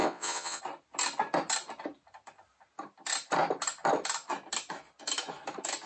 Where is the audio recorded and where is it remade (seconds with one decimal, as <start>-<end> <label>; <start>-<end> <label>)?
0.0-0.6 remade; 0.6-5.9 recorded